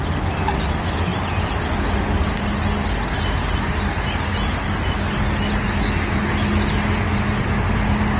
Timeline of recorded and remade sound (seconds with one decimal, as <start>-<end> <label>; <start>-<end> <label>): 0.0-8.2 recorded